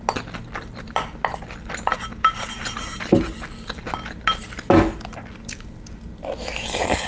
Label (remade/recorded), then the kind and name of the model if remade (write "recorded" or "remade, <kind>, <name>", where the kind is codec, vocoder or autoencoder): recorded